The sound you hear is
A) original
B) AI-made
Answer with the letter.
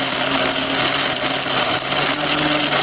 A